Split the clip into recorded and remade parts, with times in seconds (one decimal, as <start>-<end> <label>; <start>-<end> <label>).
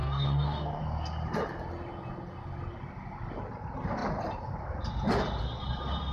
0.0-0.8 remade; 0.8-6.1 recorded